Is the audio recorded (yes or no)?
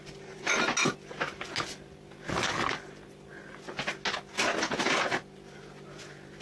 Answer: yes